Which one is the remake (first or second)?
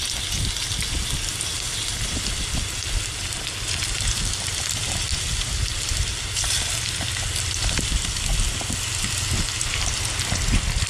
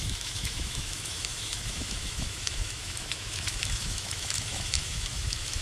second